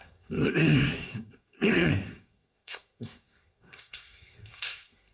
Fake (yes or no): yes